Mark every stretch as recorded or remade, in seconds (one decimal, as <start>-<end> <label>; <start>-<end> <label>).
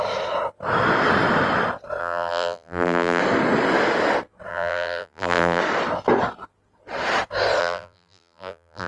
0.0-2.0 recorded; 2.0-3.2 remade; 3.2-4.5 recorded; 4.5-5.6 remade; 5.6-7.6 recorded; 7.6-8.9 remade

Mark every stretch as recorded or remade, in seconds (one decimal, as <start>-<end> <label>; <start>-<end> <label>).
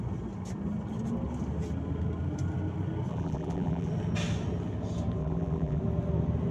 0.0-3.1 recorded; 3.1-3.9 remade; 3.9-5.2 recorded; 5.2-5.8 remade; 5.8-6.5 recorded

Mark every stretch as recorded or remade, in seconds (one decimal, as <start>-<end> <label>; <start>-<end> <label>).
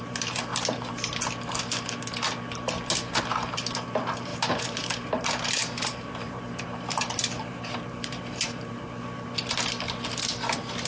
0.0-4.3 recorded; 4.3-8.7 remade; 8.7-10.9 recorded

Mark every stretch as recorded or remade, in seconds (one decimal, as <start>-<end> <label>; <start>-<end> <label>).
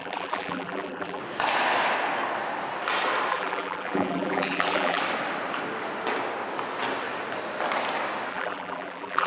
0.0-1.2 remade; 1.2-3.3 recorded; 3.3-5.0 remade; 5.0-8.3 recorded; 8.3-9.3 remade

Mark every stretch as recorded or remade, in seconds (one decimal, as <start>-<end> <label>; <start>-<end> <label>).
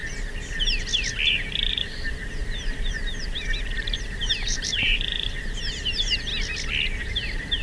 0.0-1.7 recorded; 1.7-6.3 remade; 6.3-7.0 recorded; 7.0-7.6 remade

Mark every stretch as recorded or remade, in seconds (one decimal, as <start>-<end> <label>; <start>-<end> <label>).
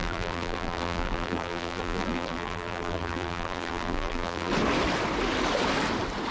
0.0-4.5 remade; 4.5-6.3 recorded